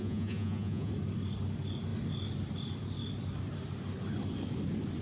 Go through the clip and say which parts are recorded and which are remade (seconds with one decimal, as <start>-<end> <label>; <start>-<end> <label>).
0.0-0.9 remade; 0.9-5.0 recorded